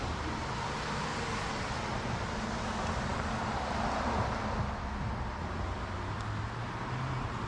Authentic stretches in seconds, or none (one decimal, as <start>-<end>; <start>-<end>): 0.0-7.5